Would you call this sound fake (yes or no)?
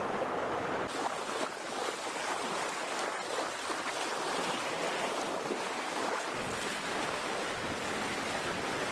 no